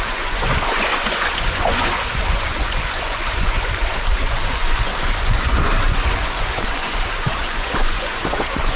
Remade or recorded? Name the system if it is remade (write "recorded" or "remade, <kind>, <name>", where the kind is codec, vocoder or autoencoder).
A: remade, vocoder, Vocos